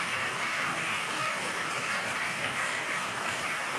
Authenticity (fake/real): fake